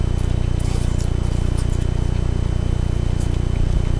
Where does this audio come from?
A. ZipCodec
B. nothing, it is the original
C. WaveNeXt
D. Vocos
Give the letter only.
B